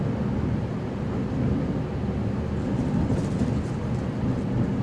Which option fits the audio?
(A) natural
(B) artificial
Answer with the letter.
A